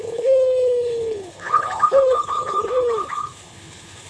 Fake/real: fake